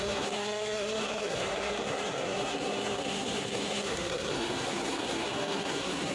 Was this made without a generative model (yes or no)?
no